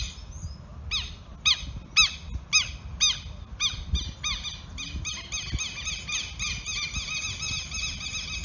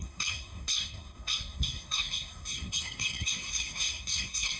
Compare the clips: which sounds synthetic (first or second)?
second